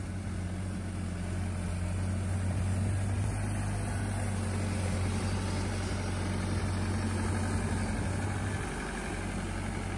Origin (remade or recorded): recorded